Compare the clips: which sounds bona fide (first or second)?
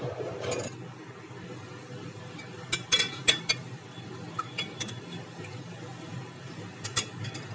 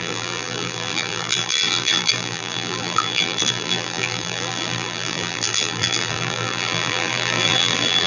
first